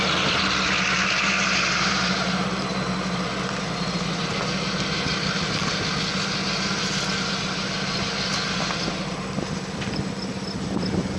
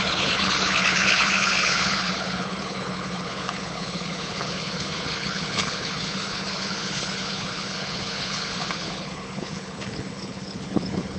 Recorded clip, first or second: first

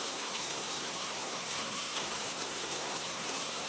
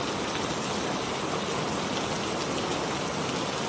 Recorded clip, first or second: second